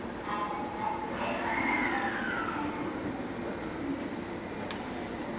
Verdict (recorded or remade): recorded